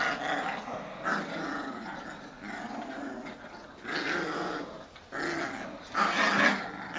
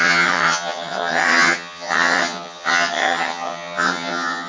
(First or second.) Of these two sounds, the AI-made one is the second